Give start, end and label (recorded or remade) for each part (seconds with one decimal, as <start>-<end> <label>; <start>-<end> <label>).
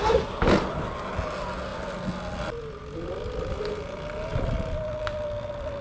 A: 0.0-5.8 recorded